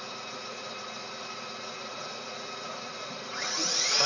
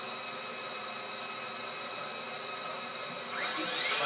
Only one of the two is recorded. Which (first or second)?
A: second